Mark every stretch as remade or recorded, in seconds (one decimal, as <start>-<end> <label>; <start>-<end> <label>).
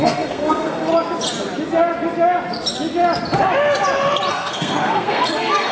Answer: 0.0-0.9 remade; 0.9-4.3 recorded; 4.3-5.7 remade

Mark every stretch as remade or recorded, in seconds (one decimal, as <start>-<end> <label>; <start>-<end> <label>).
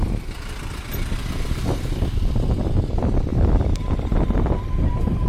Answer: 0.0-5.3 recorded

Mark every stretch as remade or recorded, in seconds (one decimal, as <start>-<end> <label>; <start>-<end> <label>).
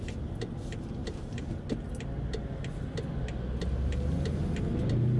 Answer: 0.0-1.0 recorded; 1.0-1.7 remade; 1.7-5.2 recorded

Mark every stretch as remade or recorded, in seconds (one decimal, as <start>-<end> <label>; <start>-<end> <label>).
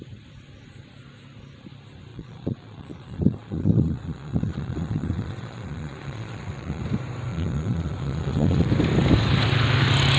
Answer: 0.0-2.1 recorded; 2.1-6.8 remade; 6.8-7.3 recorded; 7.3-8.7 remade; 8.7-10.2 recorded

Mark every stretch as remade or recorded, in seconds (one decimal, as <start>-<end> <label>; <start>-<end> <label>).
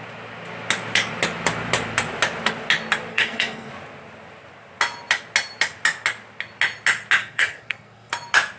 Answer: 0.0-3.1 recorded; 3.1-3.7 remade; 3.7-7.2 recorded; 7.2-8.1 remade; 8.1-8.6 recorded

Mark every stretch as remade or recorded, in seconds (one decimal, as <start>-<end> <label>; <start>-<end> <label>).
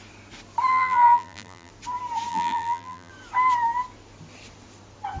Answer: 0.0-0.7 recorded; 0.7-1.7 remade; 1.7-2.3 recorded; 2.3-3.1 remade; 3.1-5.2 recorded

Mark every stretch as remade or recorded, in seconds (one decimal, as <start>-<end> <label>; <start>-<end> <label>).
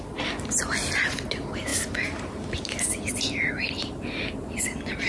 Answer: 0.0-5.1 recorded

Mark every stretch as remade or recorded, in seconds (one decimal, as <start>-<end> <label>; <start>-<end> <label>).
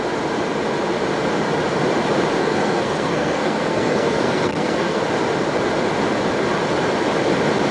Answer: 0.0-2.4 recorded; 2.4-5.0 remade; 5.0-7.7 recorded